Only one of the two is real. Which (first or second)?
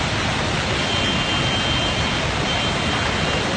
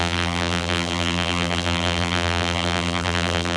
first